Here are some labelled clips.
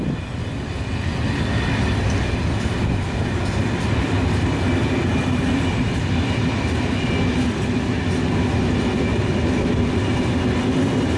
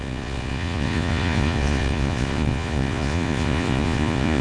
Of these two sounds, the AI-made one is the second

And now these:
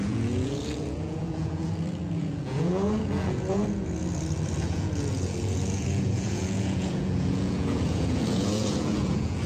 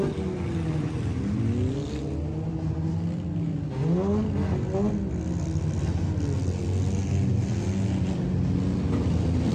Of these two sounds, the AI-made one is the first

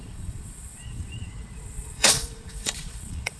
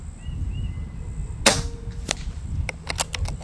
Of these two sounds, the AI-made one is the first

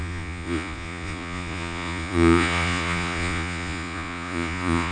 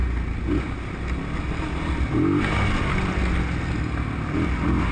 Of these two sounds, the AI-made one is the first